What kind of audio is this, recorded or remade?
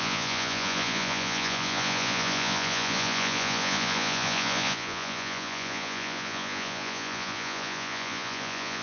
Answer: remade